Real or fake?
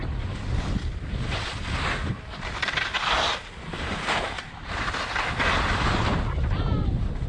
real